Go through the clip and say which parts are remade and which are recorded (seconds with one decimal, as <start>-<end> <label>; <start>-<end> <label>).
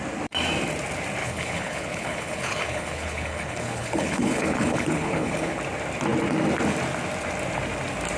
0.0-1.2 recorded; 1.2-5.6 remade; 5.6-8.2 recorded